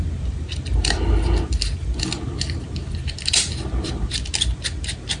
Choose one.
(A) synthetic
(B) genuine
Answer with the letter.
B